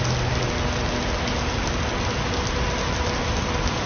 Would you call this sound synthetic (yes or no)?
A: no